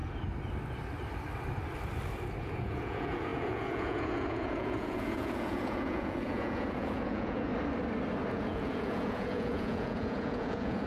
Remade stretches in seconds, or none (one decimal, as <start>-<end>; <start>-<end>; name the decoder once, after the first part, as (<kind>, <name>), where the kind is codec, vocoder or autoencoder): 2.4-7.5 (vocoder, Vocos); 8.3-10.9